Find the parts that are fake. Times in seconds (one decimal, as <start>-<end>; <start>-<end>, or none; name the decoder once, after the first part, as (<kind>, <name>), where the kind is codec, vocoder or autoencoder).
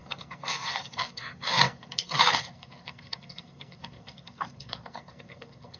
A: 0.0-5.8 (codec, SNAC)